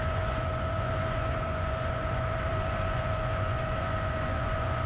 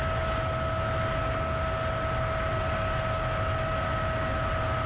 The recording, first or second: second